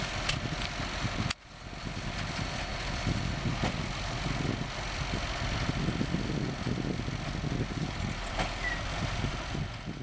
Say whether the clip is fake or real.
real